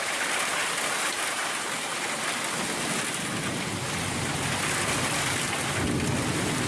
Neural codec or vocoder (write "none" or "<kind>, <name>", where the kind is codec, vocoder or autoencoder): none